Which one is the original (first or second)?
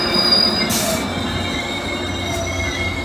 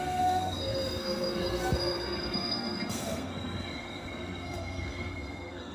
first